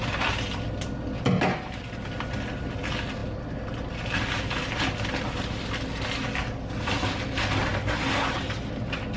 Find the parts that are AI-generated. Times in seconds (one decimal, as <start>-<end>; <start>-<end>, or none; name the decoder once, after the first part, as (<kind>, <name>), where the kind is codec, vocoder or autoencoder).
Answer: none

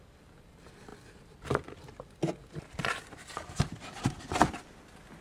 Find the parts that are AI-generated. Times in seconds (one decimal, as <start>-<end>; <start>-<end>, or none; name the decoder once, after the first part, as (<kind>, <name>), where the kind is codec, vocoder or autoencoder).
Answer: none

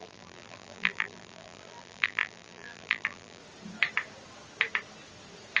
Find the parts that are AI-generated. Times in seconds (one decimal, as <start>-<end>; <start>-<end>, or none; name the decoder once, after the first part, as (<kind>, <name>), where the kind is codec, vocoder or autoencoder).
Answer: 0.0-3.4 (vocoder, BigVGAN v2)

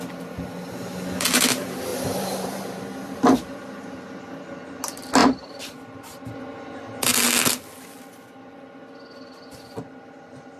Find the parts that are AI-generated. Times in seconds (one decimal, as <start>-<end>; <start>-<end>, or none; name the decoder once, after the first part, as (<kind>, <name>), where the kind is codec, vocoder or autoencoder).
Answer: 1.9-2.8 (vocoder, BigVGAN v2); 5.2-6.3

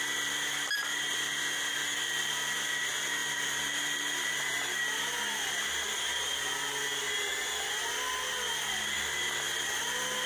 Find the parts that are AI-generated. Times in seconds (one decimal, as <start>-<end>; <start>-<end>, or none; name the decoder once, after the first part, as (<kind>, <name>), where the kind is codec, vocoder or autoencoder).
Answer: 0.8-1.4 (vocoder, BigVGAN v2); 3.2-4.0

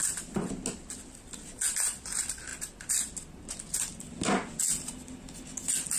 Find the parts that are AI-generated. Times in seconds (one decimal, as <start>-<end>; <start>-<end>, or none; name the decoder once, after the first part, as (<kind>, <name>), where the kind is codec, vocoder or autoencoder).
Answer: none

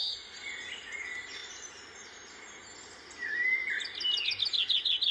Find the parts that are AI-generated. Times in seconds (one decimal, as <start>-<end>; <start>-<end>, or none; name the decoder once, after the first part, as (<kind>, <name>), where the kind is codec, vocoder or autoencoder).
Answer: 1.4-2.4 (vocoder, BigVGAN v2)